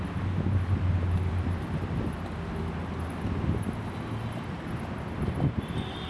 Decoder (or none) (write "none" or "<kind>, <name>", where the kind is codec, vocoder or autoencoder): none